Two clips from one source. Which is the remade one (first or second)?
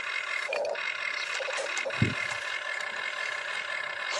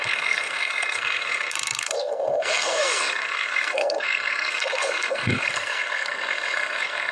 second